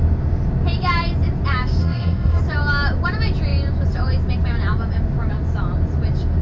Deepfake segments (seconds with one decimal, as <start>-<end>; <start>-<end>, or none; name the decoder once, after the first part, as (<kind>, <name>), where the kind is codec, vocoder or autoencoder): 1.8-2.4 (codec, SNAC)